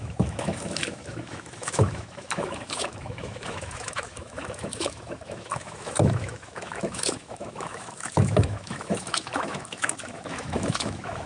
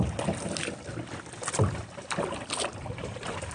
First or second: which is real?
second